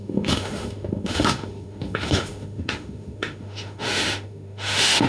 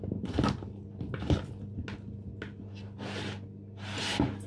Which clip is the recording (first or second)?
second